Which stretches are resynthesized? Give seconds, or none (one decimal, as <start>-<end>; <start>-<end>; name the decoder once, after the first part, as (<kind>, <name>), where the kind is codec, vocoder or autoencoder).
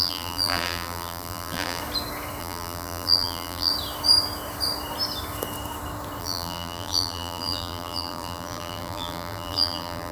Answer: 0.0-1.8 (vocoder, BigVGAN v2); 2.4-3.7; 6.2-10.1